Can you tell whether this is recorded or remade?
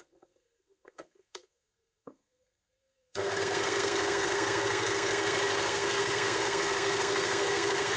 remade